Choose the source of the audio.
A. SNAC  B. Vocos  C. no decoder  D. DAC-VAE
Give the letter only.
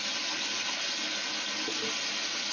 C